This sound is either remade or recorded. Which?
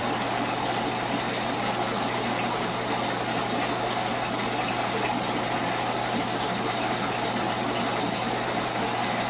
recorded